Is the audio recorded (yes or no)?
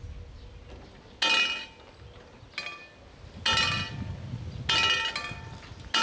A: yes